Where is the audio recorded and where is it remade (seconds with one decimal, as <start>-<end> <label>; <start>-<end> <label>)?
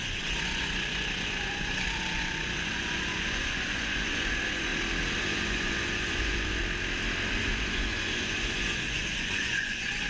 0.0-4.7 remade; 4.7-5.2 recorded; 5.2-6.6 remade; 6.6-7.3 recorded; 7.3-10.1 remade